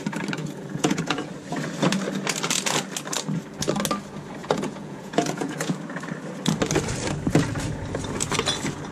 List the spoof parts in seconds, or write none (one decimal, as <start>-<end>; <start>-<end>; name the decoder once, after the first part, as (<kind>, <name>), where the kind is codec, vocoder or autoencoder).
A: 0.4-1.3 (vocoder, Vocos); 4.4-5.8